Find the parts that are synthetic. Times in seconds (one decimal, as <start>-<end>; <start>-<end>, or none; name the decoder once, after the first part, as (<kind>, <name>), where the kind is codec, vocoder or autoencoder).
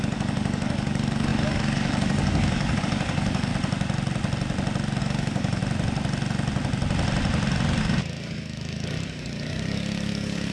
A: 0.0-3.5 (codec, DAC); 5.0-5.6; 7.8-10.5